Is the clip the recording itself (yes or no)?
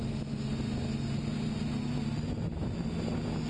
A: yes